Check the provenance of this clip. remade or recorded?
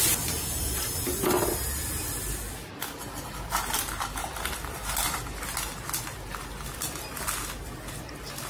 recorded